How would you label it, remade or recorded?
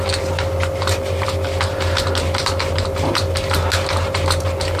recorded